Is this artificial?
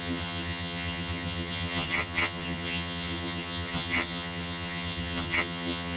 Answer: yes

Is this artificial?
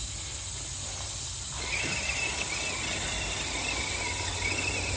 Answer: no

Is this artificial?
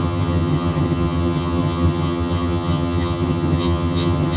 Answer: yes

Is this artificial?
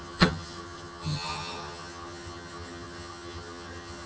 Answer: yes